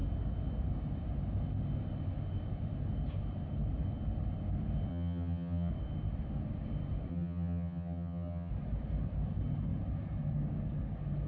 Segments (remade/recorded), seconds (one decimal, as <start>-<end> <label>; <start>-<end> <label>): 0.0-4.9 recorded; 4.9-5.7 remade; 5.7-7.1 recorded; 7.1-8.5 remade; 8.5-11.3 recorded